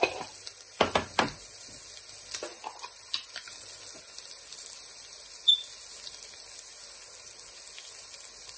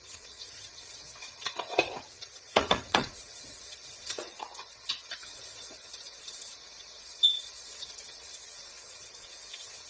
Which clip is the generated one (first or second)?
second